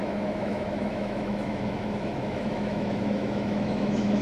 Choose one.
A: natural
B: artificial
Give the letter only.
B